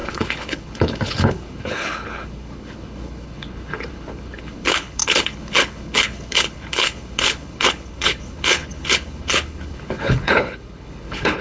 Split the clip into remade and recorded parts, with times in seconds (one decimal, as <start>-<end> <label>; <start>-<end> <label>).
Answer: 0.0-11.4 remade